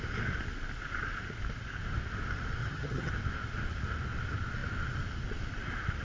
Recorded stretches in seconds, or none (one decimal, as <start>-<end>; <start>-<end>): 0.0-2.6; 3.1-6.0